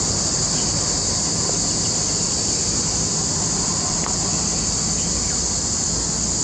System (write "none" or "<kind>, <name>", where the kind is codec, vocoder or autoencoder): none